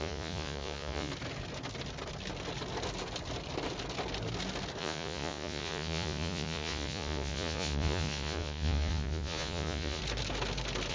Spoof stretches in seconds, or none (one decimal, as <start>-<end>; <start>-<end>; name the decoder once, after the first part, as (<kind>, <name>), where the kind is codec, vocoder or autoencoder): 0.0-1.1 (vocoder, Vocos); 4.8-10.0